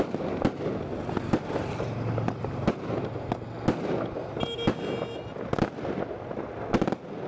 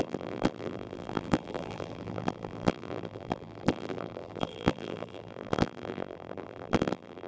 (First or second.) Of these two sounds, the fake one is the second